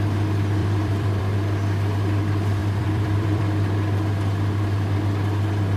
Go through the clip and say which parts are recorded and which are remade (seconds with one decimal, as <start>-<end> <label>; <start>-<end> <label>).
0.0-0.6 recorded; 0.6-1.2 remade; 1.2-2.6 recorded; 2.6-3.4 remade; 3.4-5.8 recorded